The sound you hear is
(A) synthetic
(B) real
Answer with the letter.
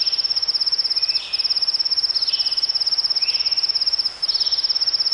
B